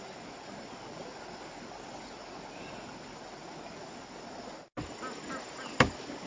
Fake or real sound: real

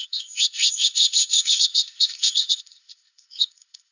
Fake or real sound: fake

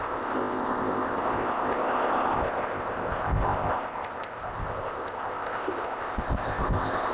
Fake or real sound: fake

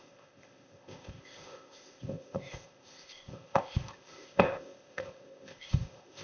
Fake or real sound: fake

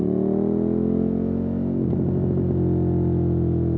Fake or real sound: real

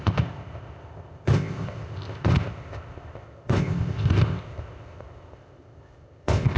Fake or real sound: fake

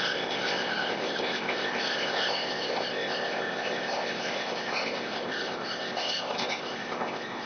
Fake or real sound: fake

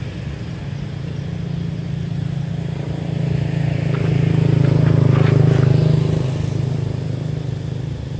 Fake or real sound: real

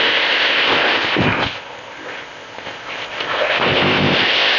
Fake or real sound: fake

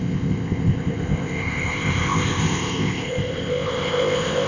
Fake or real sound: fake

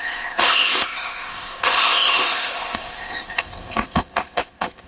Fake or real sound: fake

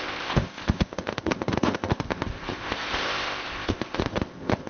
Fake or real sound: fake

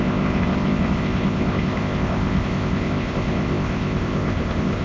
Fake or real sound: fake